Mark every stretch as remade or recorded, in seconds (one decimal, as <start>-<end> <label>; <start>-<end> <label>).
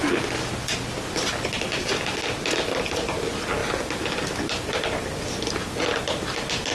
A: 0.0-6.7 recorded